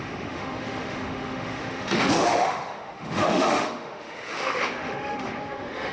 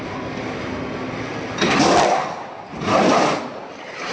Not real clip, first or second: first